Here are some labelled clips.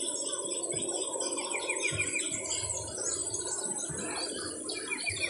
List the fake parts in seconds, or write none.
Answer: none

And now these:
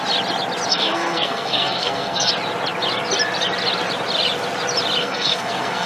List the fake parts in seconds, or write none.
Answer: 0.7-2.3 (codec, SNAC); 5.0-5.9

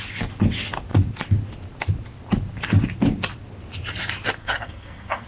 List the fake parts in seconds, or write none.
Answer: 4.4-5.3 (codec, SNAC)

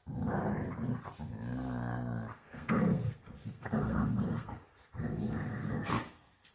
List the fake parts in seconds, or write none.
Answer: 2.3-6.5 (codec, SNAC)

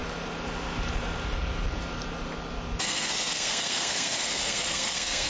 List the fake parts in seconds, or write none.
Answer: 2.8-5.3 (codec, SNAC)

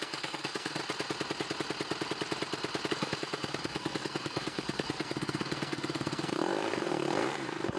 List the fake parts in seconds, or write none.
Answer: 0.0-0.8 (codec, SNAC); 2.9-7.8

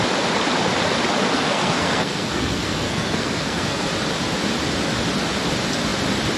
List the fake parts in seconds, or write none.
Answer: 1.3-3.9 (codec, SNAC)

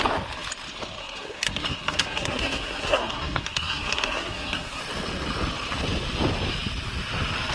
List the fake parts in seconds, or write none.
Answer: 1.0-4.8 (codec, SNAC)